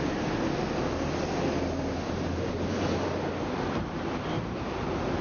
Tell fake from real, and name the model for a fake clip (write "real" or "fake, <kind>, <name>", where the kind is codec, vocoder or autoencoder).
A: real